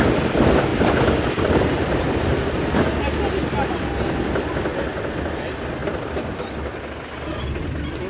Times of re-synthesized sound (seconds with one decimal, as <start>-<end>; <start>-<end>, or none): none